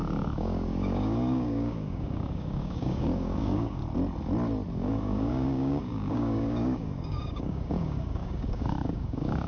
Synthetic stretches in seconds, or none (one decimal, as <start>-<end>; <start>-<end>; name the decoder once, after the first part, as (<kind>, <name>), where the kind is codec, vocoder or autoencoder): 0.0-3.8 (codec, DAC); 4.7-9.5